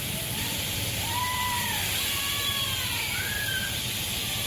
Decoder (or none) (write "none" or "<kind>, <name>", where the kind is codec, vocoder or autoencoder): vocoder, BigVGAN v2